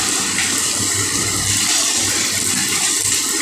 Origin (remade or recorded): remade